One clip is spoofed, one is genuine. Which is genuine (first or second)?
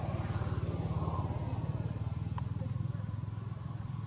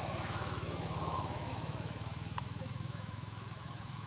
first